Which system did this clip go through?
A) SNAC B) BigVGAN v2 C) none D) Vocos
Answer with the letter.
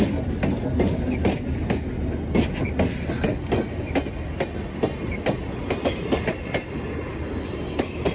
C